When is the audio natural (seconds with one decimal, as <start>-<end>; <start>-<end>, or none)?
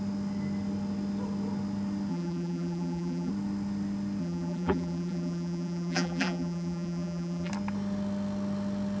0.0-2.1; 3.3-4.2; 7.5-9.0